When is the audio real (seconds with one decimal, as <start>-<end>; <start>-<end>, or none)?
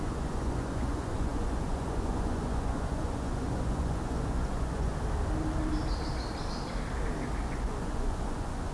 4.9-7.4